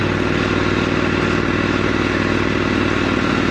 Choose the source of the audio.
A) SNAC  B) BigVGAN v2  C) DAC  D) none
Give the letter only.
D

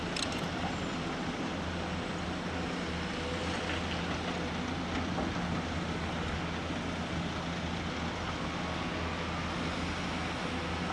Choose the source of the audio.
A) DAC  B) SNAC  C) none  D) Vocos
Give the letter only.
C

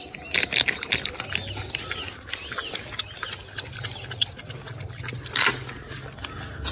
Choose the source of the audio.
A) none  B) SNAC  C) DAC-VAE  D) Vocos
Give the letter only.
A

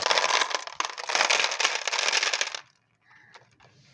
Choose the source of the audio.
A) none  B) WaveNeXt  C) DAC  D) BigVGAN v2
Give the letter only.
A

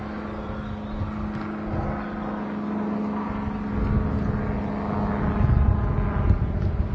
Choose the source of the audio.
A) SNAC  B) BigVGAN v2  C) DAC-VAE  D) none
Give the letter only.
D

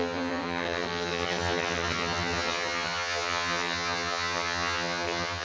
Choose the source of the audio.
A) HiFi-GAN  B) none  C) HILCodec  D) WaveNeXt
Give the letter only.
A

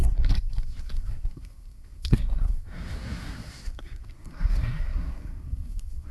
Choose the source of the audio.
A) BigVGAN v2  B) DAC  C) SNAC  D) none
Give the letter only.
C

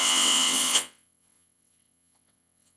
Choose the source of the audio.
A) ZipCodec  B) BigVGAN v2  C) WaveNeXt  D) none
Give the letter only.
C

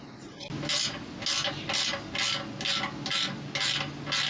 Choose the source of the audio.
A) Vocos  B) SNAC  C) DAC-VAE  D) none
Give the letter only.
D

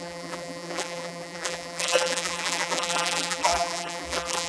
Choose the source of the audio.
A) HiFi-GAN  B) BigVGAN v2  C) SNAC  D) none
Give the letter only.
B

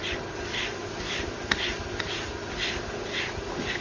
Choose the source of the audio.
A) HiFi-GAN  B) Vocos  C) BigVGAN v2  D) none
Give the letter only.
D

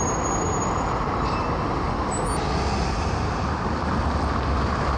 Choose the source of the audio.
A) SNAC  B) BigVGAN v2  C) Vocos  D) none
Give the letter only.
D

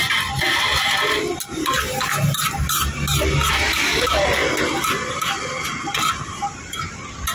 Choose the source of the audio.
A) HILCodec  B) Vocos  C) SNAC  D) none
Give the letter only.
D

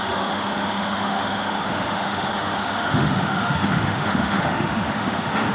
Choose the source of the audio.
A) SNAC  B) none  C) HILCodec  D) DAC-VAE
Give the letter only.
D